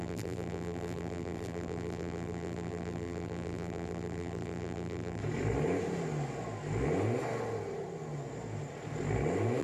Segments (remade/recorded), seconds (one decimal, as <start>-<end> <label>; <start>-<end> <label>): 0.0-5.2 remade; 5.2-9.6 recorded